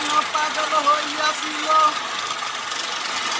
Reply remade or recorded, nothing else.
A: recorded